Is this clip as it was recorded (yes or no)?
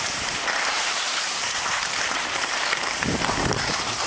no